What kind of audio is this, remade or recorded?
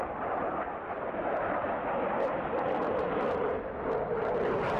recorded